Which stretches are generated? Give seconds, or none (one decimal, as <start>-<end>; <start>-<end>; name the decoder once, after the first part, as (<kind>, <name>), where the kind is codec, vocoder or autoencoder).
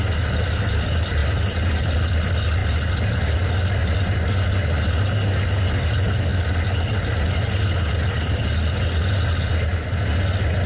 none